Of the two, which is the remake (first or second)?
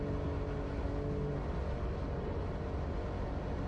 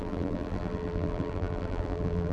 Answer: second